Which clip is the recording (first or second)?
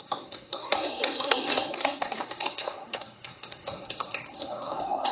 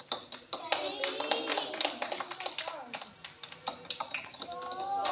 second